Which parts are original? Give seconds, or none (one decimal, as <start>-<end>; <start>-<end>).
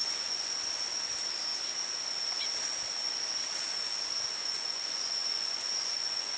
0.5-4.4